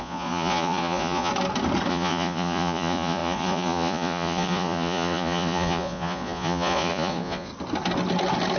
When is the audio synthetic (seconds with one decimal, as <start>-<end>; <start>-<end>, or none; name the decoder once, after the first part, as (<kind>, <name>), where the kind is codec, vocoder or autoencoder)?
0.0-1.3 (vocoder, Vocos); 1.9-7.5